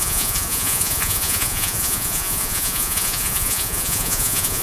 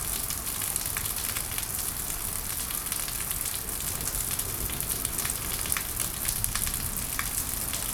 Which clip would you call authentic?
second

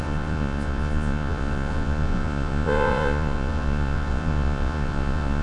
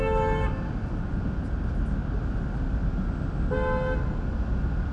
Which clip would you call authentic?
second